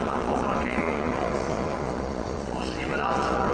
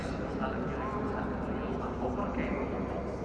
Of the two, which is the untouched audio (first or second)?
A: second